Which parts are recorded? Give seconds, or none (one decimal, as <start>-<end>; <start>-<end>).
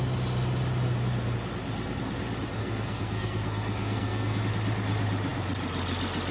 0.0-2.6; 4.4-6.3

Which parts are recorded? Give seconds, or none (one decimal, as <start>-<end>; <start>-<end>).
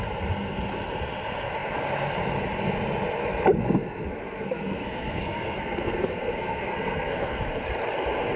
0.0-3.6; 7.4-8.4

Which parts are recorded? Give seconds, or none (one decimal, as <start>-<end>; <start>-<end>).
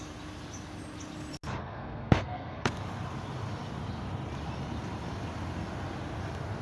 0.0-1.6; 2.7-6.6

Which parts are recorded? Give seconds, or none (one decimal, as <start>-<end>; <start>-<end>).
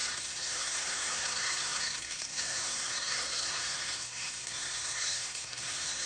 none